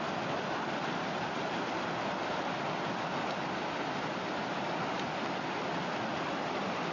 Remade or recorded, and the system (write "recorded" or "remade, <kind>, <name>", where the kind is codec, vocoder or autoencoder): recorded